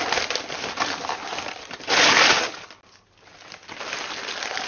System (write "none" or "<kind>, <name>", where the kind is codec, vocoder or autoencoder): none